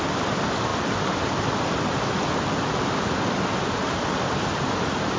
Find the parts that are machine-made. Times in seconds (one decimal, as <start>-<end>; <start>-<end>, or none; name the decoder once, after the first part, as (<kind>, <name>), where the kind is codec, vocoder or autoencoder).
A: none